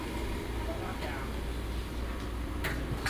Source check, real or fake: real